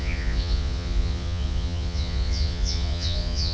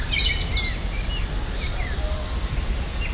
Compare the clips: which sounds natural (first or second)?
second